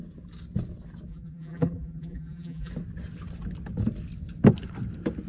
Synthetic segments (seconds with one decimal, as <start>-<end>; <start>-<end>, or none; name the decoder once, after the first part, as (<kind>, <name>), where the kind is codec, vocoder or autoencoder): 1.1-2.7 (vocoder, BigVGAN v2)